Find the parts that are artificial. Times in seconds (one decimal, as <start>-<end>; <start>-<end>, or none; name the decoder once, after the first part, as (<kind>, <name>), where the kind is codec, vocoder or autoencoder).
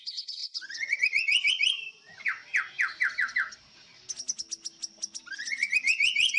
0.0-2.4 (vocoder, Vocos); 5.3-6.4